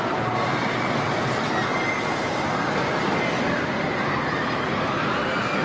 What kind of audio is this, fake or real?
real